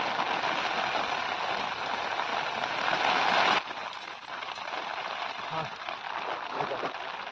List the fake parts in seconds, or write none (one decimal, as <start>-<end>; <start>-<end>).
none